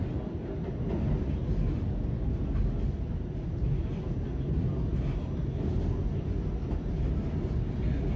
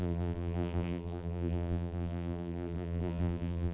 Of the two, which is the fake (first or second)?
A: second